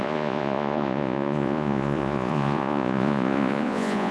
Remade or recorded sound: remade